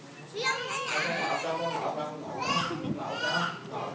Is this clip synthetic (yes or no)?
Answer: no